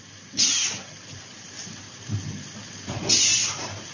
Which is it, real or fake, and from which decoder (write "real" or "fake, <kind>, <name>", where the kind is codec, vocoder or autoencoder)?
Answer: real